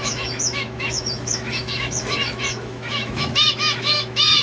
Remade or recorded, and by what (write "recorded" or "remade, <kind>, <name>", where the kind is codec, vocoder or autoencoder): remade, autoencoder, DAC-VAE